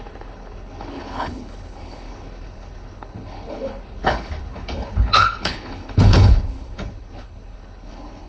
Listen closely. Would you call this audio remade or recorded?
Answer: remade